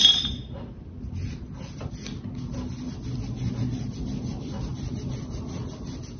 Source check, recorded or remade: recorded